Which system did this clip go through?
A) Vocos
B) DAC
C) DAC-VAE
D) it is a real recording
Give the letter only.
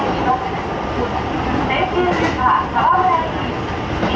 D